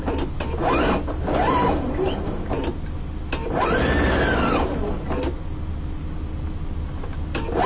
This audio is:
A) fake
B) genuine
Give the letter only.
B